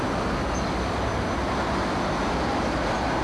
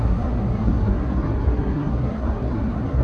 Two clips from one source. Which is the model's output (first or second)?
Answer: second